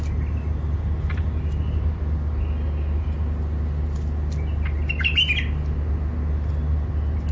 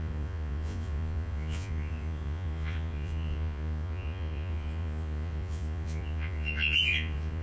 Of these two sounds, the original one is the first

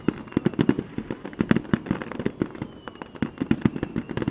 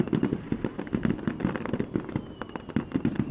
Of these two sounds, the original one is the first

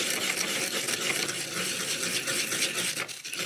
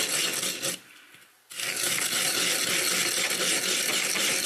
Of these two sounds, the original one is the second